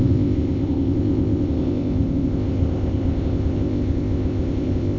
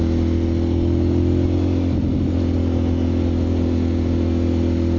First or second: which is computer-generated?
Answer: first